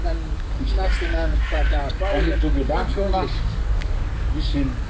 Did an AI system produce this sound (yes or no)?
yes